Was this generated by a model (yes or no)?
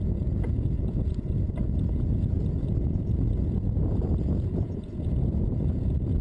yes